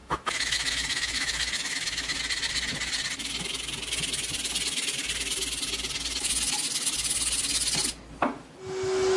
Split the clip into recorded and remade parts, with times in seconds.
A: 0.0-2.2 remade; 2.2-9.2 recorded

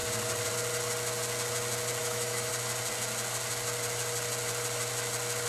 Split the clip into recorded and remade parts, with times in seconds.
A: 0.0-2.0 recorded; 2.0-2.5 remade; 2.5-5.5 recorded

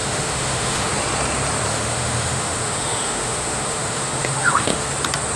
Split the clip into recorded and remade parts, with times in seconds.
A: 0.0-0.9 remade; 0.9-1.7 recorded; 1.7-4.9 remade; 4.9-5.4 recorded

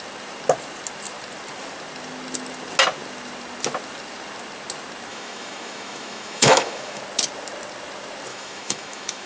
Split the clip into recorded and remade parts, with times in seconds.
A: 0.0-5.1 recorded; 5.1-7.0 remade; 7.0-8.3 recorded; 8.3-9.3 remade

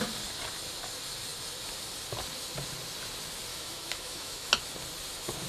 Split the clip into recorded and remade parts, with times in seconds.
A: 0.0-3.5 recorded; 3.5-4.5 remade; 4.5-5.5 recorded

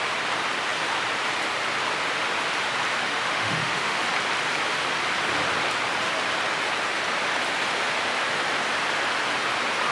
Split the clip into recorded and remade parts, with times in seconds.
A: 0.0-3.1 recorded; 3.1-4.0 remade; 4.0-9.9 recorded

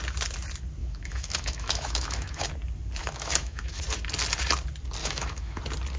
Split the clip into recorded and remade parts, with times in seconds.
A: 0.0-0.8 recorded; 0.8-2.5 remade; 2.5-3.0 recorded; 3.0-3.8 remade; 3.8-5.0 recorded; 5.0-5.6 remade; 5.6-6.0 recorded

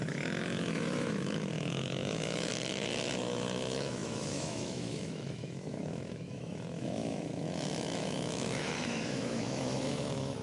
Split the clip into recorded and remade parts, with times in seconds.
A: 0.0-2.5 remade; 2.5-3.2 recorded; 3.2-10.4 remade